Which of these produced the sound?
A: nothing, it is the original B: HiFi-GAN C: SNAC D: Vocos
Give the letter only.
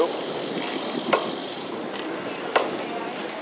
A